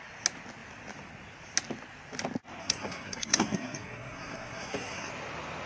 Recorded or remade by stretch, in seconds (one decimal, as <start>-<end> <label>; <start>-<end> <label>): 0.0-2.6 recorded; 2.6-5.1 remade; 5.1-5.7 recorded